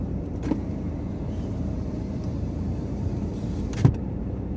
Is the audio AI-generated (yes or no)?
yes